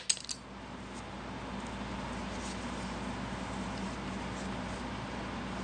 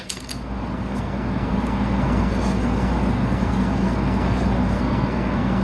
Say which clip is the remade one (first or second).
second